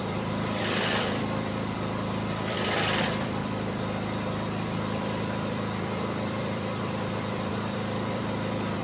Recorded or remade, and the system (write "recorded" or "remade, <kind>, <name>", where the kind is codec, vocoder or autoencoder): remade, vocoder, BigVGAN v2